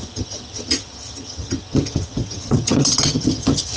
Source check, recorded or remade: remade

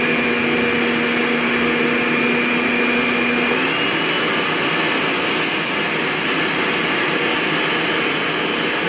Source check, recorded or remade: recorded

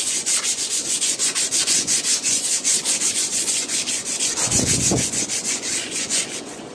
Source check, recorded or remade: remade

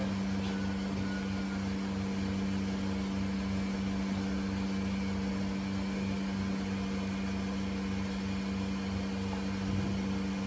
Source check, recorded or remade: recorded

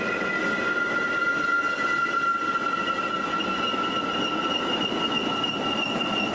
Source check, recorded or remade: recorded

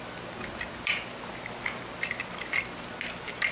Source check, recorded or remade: recorded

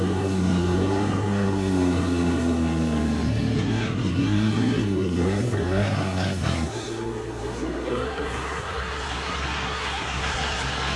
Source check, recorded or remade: remade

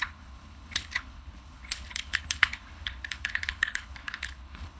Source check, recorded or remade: remade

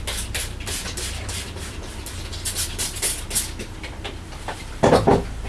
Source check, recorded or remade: recorded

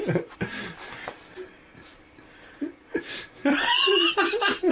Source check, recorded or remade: recorded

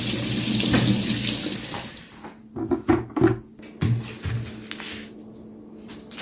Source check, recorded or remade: recorded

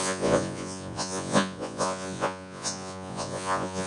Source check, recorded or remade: remade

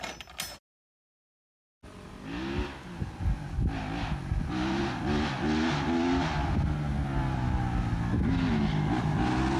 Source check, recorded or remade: recorded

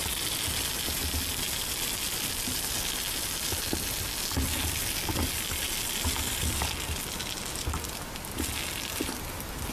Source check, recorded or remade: recorded